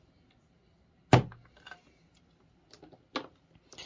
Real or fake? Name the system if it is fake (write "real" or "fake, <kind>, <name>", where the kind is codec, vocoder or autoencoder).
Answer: real